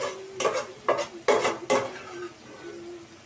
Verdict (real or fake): real